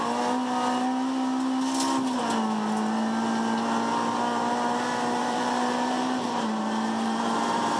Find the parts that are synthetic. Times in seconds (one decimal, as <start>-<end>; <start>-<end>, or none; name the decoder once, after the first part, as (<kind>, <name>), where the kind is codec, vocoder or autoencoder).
5.2-7.8 (vocoder, BigVGAN v2)